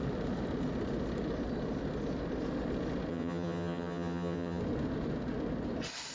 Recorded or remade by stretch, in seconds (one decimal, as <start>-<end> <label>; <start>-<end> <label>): 0.0-3.1 recorded; 3.1-4.6 remade; 4.6-6.1 recorded